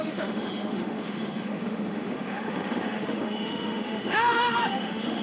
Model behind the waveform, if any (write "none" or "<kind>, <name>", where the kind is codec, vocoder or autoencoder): autoencoder, DAC-VAE